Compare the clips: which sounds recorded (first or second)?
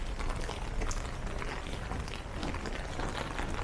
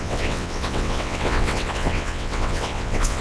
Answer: first